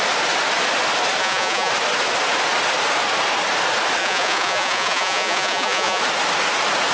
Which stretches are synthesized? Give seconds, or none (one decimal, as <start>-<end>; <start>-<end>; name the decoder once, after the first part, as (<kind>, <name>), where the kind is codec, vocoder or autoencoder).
1.2-1.7 (vocoder, Vocos); 4.0-6.0